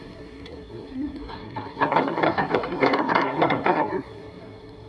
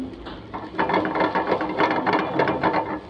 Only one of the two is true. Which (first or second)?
second